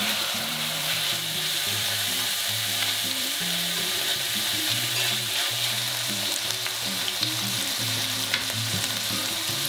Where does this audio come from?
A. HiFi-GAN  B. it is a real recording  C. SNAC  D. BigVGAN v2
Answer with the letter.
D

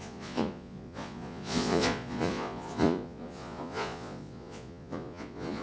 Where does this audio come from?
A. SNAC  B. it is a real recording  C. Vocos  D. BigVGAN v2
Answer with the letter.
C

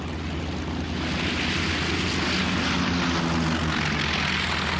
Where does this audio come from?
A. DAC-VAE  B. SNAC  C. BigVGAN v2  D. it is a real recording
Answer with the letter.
D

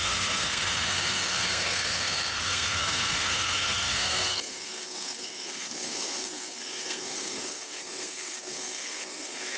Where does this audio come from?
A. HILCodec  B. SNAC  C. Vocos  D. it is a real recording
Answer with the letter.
B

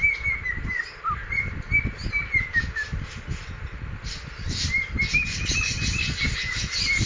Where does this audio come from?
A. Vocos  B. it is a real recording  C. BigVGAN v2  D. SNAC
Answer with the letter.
B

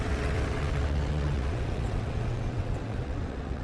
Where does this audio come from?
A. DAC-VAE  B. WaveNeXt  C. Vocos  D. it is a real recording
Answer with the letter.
B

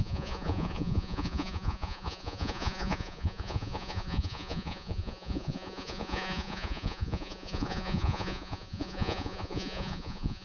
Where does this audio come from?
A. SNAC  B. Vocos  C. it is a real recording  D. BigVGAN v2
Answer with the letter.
B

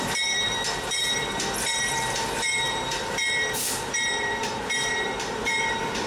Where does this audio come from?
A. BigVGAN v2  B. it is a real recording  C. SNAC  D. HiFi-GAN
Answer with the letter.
A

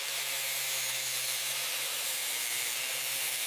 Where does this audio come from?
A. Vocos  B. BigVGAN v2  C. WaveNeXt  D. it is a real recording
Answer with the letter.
D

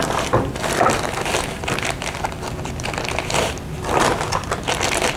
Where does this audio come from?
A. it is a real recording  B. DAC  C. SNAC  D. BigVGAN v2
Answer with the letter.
A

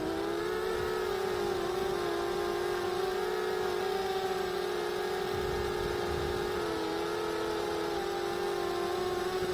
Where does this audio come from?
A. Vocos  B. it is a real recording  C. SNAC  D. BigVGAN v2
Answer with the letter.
B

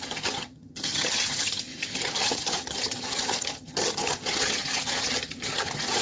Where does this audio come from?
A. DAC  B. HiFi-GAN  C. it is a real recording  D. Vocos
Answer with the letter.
B